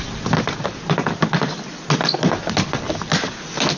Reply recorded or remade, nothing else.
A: recorded